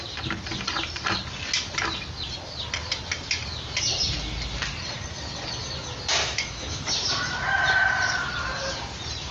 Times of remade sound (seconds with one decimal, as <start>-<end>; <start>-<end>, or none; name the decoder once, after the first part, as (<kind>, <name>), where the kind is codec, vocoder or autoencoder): 6.2-6.9 (autoencoder, DAC-VAE)